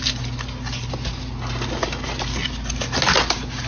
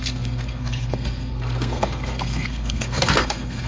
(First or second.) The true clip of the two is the first